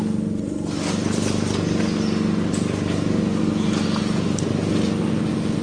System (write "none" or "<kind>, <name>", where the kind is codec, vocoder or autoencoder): none